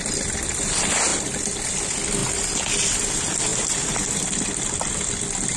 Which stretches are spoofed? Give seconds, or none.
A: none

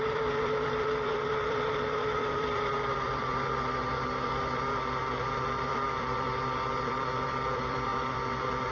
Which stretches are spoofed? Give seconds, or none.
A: 0.0-3.3 (vocoder, BigVGAN v2); 5.5-6.3; 6.8-8.7

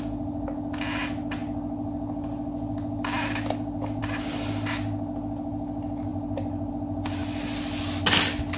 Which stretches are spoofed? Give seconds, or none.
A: none

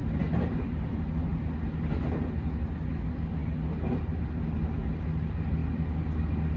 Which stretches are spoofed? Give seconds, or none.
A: none

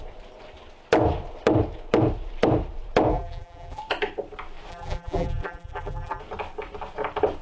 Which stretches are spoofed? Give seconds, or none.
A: 3.1-3.8 (vocoder, BigVGAN v2); 4.7-6.2

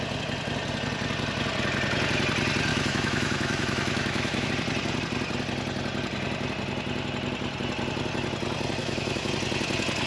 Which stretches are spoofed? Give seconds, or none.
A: 2.7-4.5 (autoencoder, DAC-VAE); 8.8-9.3